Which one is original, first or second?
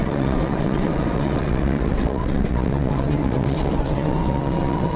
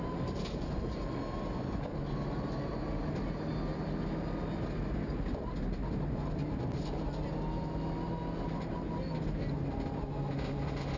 second